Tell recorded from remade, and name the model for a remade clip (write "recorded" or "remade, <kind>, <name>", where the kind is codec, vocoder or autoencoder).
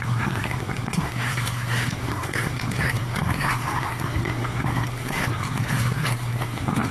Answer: remade, codec, SNAC